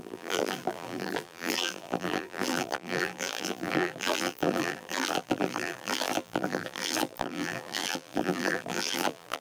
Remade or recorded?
remade